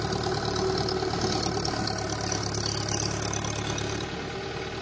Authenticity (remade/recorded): recorded